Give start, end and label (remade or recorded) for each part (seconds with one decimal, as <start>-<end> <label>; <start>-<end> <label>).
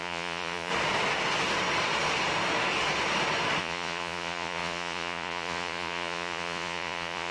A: 0.0-0.7 remade; 0.7-3.6 recorded; 3.6-7.3 remade